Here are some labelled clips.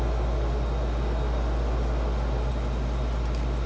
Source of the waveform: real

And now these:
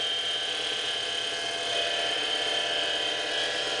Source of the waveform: real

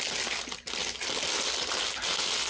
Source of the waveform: real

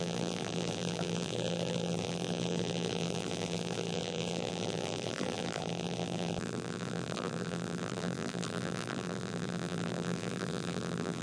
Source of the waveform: fake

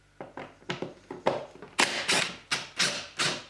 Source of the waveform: real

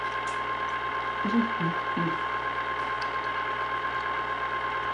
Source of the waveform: real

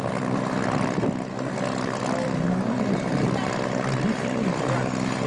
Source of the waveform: real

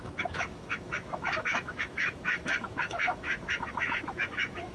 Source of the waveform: fake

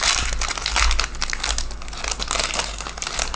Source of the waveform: real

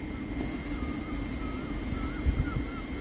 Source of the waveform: real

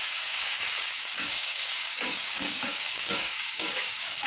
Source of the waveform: fake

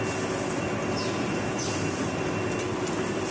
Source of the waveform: real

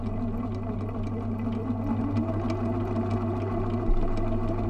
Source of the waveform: real